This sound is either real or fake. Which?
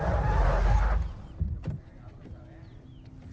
real